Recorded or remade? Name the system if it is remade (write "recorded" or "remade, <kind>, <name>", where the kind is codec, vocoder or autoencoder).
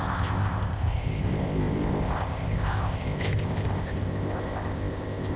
remade, codec, ZipCodec